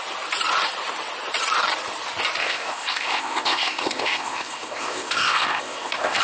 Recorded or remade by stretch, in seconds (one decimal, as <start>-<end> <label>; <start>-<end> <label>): 0.0-2.4 recorded; 2.4-6.2 remade